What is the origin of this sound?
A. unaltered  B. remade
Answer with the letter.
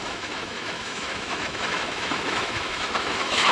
B